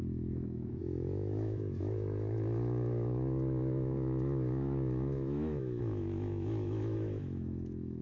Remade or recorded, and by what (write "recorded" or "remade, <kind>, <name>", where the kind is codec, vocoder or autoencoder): remade, autoencoder, DAC-VAE